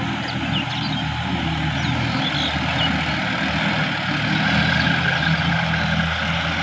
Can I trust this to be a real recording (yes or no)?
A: yes